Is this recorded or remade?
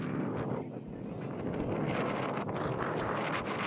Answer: recorded